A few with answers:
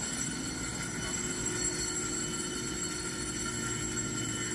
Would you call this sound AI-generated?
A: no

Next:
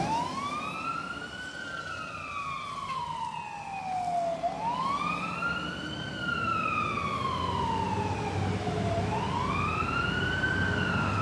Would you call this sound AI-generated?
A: no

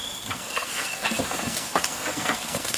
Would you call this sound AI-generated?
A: yes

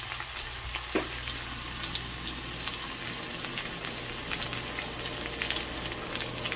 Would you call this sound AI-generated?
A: no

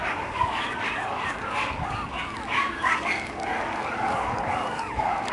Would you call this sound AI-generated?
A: yes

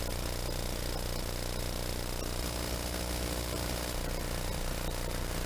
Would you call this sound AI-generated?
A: no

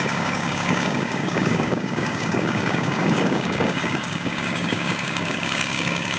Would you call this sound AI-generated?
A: yes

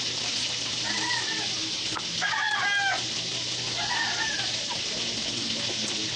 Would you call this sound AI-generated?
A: no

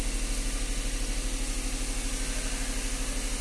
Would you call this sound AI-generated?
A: no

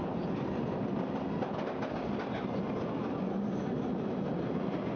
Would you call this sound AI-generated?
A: no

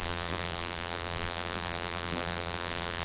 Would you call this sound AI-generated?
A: yes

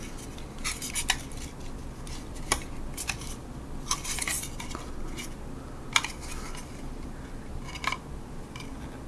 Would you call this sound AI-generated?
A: no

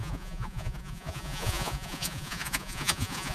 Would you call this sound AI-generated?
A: yes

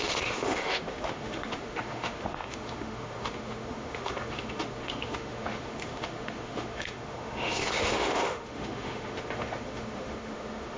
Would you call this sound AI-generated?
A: yes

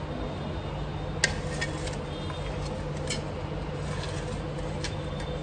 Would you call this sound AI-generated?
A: no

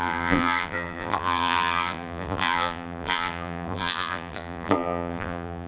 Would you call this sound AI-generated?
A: yes